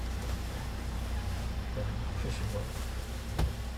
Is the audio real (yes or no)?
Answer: yes